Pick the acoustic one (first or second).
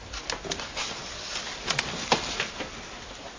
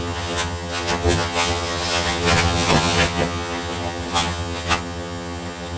first